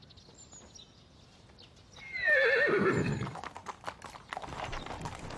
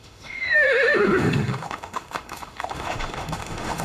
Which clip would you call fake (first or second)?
second